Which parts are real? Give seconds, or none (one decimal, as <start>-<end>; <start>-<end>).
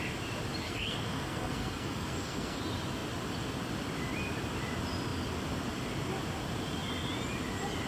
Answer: 0.0-0.6; 2.6-7.9